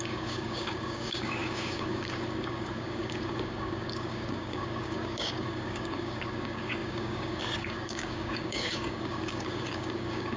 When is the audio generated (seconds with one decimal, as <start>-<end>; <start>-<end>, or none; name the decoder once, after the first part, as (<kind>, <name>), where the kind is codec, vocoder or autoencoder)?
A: 0.0-10.4 (codec, DAC)